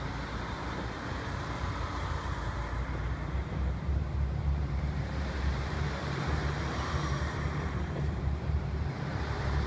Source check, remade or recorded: remade